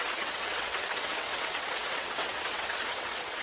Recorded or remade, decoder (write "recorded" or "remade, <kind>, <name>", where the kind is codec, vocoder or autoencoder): remade, vocoder, WaveNeXt